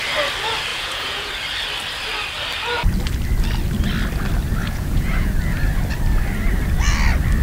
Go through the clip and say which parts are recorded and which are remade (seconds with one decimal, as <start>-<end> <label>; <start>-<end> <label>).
0.0-0.7 recorded; 0.7-1.3 remade; 1.3-4.6 recorded; 4.6-5.3 remade; 5.3-7.4 recorded